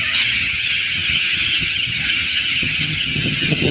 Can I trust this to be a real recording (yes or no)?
no